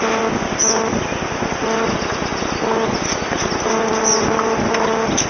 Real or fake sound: real